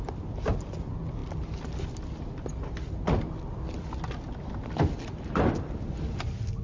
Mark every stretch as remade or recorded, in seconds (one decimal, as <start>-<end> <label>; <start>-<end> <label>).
0.0-6.6 recorded